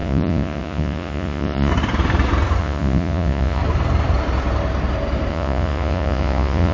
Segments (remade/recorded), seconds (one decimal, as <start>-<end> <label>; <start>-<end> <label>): 0.0-1.7 remade; 1.7-2.6 recorded; 2.6-3.6 remade; 3.6-5.3 recorded; 5.3-6.7 remade